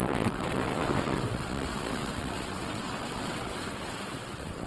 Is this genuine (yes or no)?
no